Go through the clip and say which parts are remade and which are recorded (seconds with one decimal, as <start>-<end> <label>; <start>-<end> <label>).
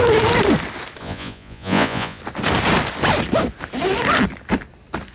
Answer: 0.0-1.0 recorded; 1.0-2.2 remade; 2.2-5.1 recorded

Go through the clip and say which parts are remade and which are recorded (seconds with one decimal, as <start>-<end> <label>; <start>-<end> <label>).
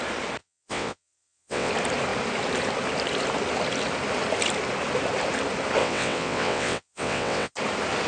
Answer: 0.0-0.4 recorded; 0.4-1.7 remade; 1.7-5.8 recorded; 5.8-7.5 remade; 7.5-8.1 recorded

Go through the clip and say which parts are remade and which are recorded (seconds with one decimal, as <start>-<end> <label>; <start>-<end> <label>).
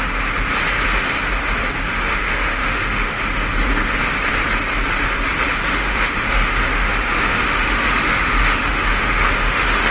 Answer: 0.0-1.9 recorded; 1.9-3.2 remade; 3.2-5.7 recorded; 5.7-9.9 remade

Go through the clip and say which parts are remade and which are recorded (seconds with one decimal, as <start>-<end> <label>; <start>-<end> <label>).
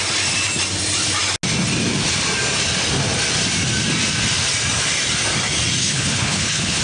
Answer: 0.0-5.8 recorded; 5.8-6.8 remade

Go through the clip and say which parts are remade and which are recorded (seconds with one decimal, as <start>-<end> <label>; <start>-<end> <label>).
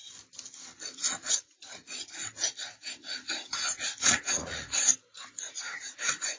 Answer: 0.0-1.3 recorded; 1.3-2.2 remade; 2.2-2.8 recorded; 2.8-4.9 remade; 4.9-5.5 recorded; 5.5-6.4 remade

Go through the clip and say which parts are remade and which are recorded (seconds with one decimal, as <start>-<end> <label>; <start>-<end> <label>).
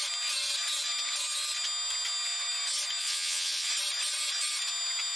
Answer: 0.0-3.0 recorded; 3.0-3.7 remade; 3.7-5.2 recorded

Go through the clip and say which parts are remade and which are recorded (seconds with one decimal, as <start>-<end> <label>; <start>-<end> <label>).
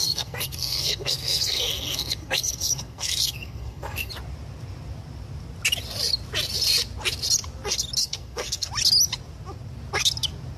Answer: 0.0-4.1 remade; 4.1-8.0 recorded; 8.0-8.7 remade; 8.7-10.6 recorded